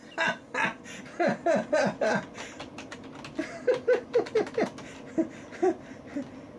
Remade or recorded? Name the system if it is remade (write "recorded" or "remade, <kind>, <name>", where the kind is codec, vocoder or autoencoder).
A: recorded